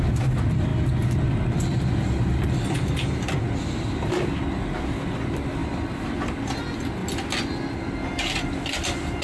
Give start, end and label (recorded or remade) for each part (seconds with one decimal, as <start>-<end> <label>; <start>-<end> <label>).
0.0-0.7 remade; 0.7-1.7 recorded; 1.7-7.0 remade; 7.0-8.7 recorded; 8.7-9.2 remade